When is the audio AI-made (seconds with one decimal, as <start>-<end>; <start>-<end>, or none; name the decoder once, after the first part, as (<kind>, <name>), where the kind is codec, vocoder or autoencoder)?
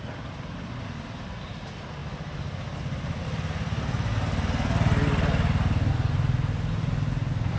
none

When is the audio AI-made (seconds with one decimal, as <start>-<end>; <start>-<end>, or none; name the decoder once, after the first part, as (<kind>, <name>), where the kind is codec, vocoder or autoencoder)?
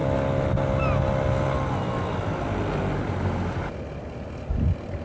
none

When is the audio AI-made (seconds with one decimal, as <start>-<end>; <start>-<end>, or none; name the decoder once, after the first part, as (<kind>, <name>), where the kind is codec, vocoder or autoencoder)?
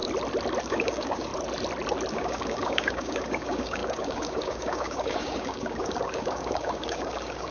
0.6-1.3 (codec, DAC); 2.1-7.5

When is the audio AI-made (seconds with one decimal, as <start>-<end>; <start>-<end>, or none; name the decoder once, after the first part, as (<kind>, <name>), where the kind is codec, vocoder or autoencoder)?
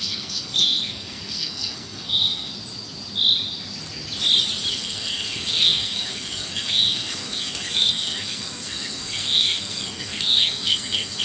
0.0-2.5 (codec, SNAC); 4.7-11.2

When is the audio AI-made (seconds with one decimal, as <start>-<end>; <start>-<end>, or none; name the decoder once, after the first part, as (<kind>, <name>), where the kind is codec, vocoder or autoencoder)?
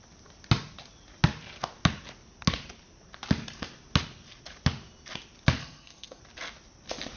5.6-6.2 (codec, SNAC)